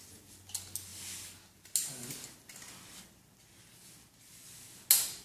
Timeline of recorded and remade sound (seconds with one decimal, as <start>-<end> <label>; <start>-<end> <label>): 0.0-5.2 recorded